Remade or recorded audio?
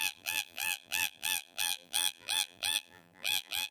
remade